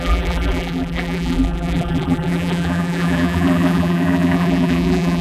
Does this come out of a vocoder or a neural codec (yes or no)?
yes